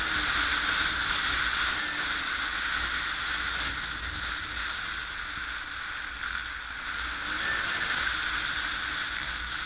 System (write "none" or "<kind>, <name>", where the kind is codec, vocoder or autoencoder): none